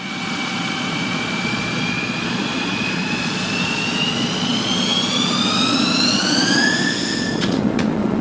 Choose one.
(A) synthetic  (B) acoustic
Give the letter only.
A